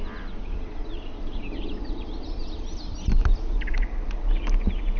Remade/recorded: recorded